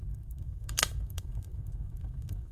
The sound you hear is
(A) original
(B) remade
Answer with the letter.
B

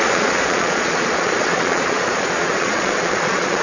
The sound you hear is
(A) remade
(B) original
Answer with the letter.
A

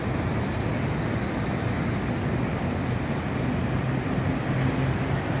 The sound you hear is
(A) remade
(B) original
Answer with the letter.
B